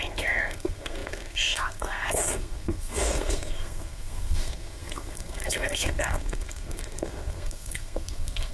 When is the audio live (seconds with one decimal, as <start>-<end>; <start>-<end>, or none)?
none